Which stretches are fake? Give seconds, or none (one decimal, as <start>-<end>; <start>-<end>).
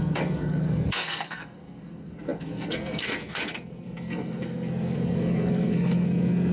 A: 0.0-6.5